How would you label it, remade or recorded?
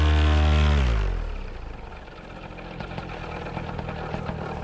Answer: recorded